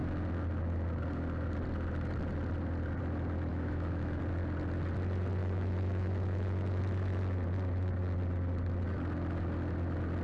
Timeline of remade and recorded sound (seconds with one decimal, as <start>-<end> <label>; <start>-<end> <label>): 0.0-3.5 recorded; 3.5-4.2 remade; 4.2-5.4 recorded; 5.4-6.8 remade; 6.8-10.2 recorded